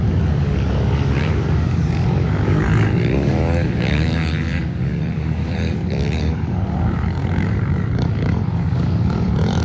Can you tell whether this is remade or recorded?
remade